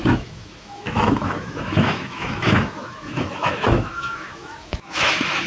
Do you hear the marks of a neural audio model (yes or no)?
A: yes